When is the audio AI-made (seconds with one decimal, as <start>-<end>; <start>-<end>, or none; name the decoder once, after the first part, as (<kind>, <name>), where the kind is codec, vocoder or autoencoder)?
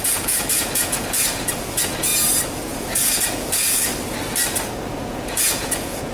0.0-2.1 (vocoder, Vocos); 2.7-3.9; 4.7-6.1